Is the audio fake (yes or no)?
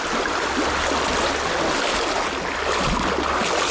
no